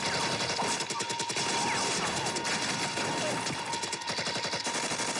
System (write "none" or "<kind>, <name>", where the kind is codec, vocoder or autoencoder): none